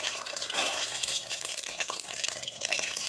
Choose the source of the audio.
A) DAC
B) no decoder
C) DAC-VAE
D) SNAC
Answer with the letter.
D